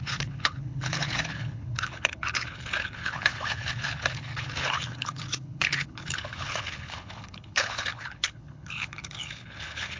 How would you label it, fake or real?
fake